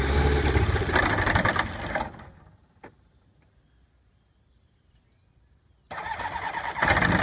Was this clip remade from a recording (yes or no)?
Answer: no